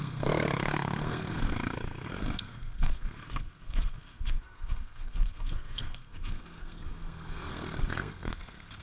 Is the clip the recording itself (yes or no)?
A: no